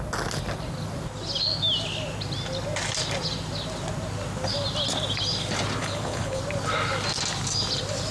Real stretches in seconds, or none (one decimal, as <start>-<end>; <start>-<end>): 0.0-5.8; 6.4-8.1